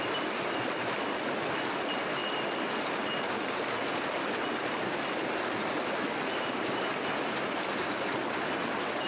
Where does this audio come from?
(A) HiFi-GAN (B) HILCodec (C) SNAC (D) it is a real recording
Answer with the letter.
D